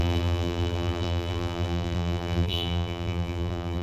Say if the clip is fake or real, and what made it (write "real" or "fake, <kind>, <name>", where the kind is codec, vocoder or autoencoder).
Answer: fake, vocoder, BigVGAN v2